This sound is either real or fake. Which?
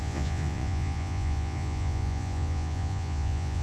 fake